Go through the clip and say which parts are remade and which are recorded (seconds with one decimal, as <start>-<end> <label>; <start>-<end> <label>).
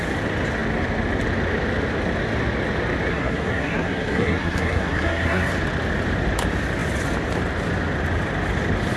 0.0-3.1 recorded; 3.1-5.5 remade; 5.5-9.0 recorded